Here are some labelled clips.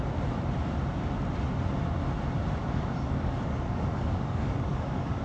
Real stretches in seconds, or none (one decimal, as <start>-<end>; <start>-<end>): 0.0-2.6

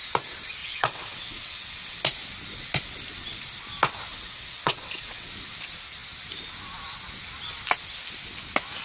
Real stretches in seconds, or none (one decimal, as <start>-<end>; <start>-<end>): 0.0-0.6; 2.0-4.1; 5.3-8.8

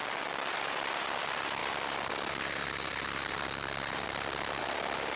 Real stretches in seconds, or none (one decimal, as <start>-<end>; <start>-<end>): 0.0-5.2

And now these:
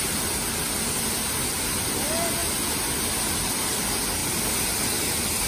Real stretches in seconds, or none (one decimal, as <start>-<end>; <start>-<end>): 0.0-5.5

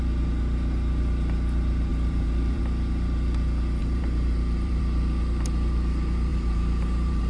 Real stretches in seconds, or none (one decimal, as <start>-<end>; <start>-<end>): 0.0-1.9; 2.6-3.8; 4.8-6.3